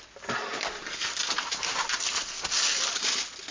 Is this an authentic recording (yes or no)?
yes